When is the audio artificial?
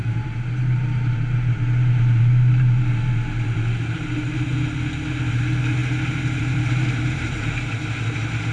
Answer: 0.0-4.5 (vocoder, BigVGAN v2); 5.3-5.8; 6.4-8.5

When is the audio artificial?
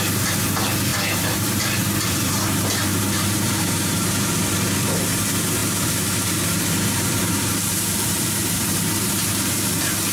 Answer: 0.9-2.3 (vocoder, BigVGAN v2); 2.9-4.3; 5.6-9.5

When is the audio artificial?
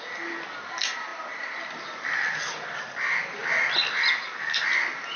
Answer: none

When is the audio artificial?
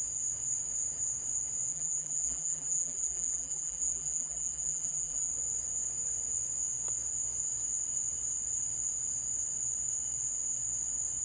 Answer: 1.7-5.3 (vocoder, BigVGAN v2)